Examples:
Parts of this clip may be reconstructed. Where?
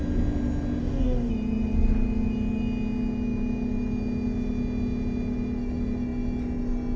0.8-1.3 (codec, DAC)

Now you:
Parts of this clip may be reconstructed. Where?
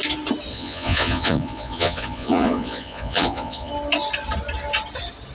0.5-3.7 (vocoder, Vocos)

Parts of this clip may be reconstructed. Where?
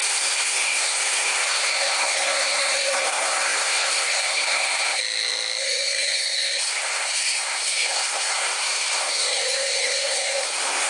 0.0-5.0 (codec, SNAC); 5.6-10.9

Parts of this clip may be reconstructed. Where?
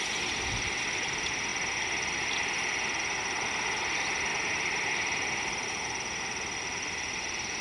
none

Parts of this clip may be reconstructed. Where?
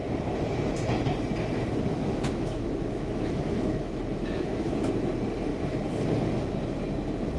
1.9-4.9 (autoencoder, DAC-VAE)